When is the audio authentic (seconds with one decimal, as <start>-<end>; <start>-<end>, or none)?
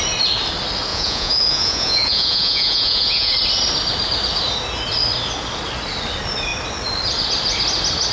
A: 0.0-0.9; 3.3-8.1